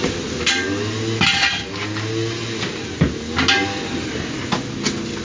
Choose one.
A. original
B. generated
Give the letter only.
A